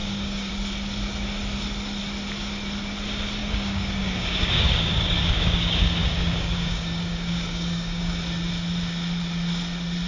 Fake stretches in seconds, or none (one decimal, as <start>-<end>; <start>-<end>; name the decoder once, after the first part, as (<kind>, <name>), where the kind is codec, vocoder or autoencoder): 0.0-0.5 (codec, DAC); 3.4-8.2